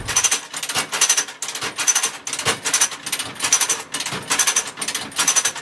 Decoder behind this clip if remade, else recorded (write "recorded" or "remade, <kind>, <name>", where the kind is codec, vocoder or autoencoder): recorded